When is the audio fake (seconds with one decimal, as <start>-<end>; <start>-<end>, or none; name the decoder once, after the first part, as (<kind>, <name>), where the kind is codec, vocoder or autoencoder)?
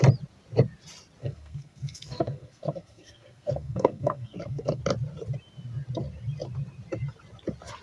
1.2-4.8 (codec, SNAC)